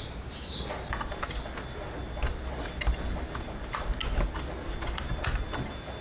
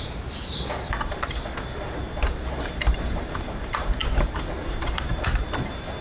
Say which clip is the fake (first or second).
second